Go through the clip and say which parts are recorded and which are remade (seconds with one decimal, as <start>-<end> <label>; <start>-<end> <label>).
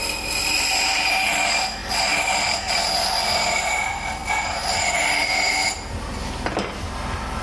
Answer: 0.0-7.4 recorded